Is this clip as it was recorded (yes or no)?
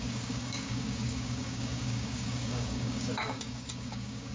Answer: no